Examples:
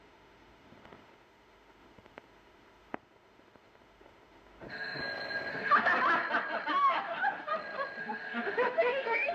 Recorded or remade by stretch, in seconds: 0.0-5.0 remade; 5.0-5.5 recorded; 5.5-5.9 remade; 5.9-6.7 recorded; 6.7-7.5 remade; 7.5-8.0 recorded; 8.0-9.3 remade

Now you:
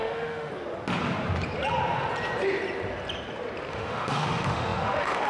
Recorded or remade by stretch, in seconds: 0.0-0.5 remade; 0.5-3.7 recorded; 3.7-5.3 remade